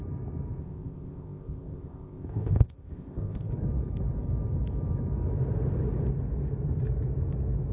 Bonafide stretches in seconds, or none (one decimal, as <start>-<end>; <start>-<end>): 0.0-0.6; 3.5-7.7